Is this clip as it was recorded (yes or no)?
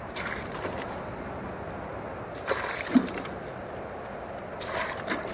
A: yes